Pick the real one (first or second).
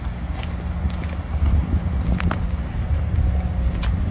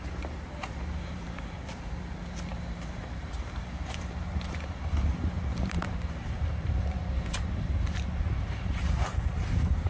first